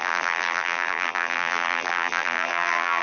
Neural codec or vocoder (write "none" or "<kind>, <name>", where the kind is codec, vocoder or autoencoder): vocoder, BigVGAN v2